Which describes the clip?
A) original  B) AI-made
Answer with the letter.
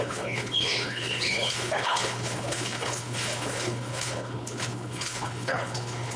B